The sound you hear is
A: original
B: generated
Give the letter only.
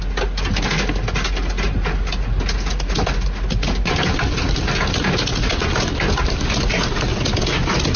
A